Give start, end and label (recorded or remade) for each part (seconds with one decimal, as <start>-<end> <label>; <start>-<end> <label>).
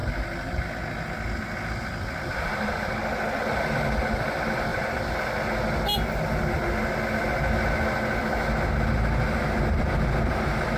0.0-10.8 recorded